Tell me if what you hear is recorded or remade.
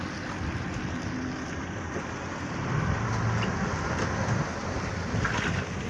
recorded